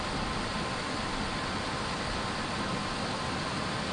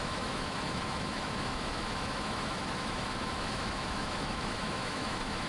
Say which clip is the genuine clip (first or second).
first